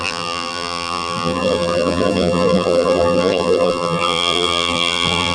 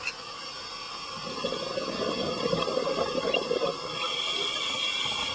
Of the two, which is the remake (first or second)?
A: first